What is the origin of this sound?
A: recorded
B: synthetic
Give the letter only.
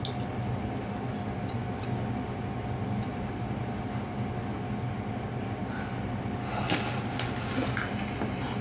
A